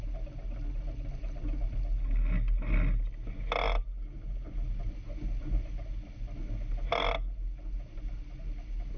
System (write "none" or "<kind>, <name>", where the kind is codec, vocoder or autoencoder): none